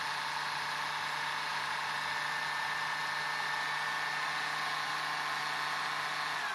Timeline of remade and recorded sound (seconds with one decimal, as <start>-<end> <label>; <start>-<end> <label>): 0.0-6.5 recorded